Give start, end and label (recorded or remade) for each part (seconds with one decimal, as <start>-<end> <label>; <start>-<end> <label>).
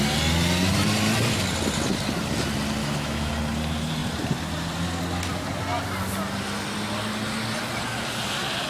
0.0-2.8 recorded; 2.8-3.3 remade; 3.3-8.7 recorded